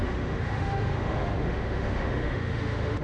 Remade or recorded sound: remade